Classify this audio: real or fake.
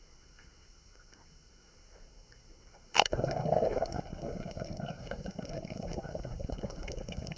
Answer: fake